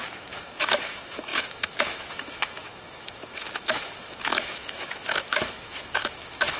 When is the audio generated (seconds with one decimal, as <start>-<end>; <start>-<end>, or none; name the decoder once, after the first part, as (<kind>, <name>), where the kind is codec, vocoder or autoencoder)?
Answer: 0.0-6.6 (autoencoder, DAC-VAE)